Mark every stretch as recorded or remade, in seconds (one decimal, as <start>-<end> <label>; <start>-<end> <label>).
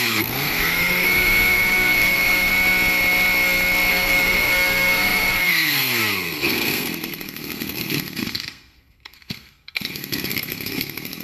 0.0-2.5 remade; 2.5-3.9 recorded; 3.9-11.2 remade